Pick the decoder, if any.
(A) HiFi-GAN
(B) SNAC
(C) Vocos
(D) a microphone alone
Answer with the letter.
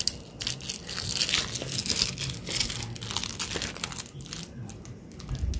D